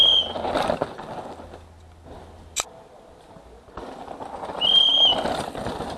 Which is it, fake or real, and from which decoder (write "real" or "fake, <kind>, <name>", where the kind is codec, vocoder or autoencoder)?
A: real